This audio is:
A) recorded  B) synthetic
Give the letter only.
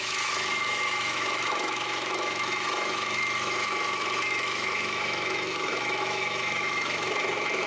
B